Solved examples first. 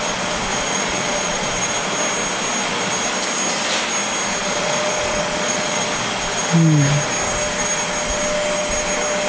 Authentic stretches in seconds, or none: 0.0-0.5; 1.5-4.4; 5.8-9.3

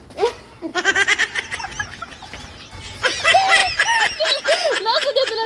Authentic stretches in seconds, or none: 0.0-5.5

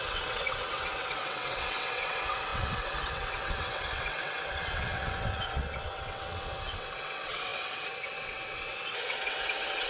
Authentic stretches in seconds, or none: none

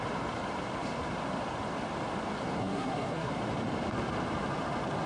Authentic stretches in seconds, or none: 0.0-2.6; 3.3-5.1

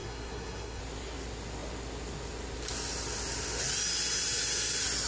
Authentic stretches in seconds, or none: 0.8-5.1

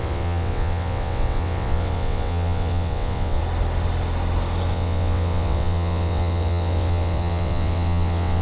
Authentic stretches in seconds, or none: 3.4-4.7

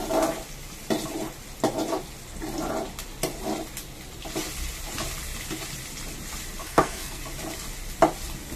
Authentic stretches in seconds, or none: 0.0-6.6; 7.2-8.6

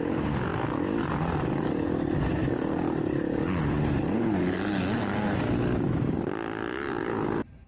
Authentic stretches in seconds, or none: 0.0-7.7